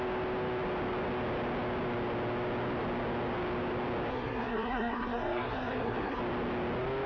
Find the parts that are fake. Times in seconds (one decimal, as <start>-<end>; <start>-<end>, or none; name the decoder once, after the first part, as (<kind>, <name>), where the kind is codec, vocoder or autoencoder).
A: 4.1-6.2 (codec, SNAC)